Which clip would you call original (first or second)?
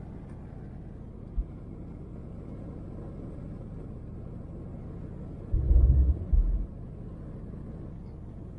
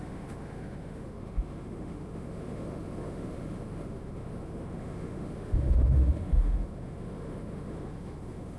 first